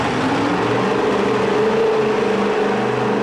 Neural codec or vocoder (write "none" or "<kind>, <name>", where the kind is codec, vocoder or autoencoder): none